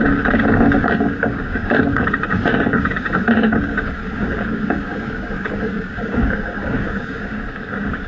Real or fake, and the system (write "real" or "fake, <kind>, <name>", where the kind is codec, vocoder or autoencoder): fake, codec, DAC